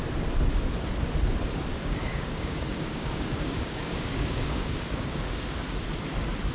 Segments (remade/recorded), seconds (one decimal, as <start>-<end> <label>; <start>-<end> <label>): 0.0-1.7 recorded; 1.7-5.6 remade; 5.6-6.5 recorded